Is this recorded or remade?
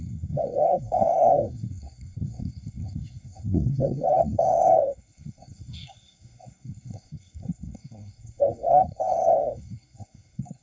remade